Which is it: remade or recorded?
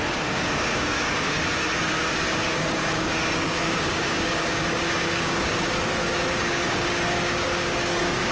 remade